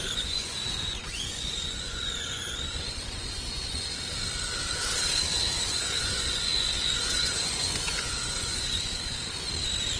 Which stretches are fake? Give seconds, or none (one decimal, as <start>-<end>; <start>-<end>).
0.0-3.9; 5.3-8.8